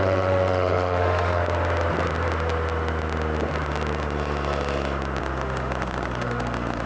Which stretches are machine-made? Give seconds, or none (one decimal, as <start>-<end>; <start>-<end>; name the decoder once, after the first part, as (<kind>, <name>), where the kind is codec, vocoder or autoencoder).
0.0-1.4 (autoencoder, DAC-VAE); 5.2-6.9